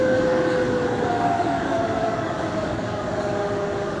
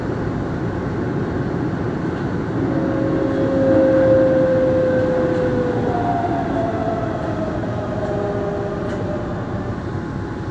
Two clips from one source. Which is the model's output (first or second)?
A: first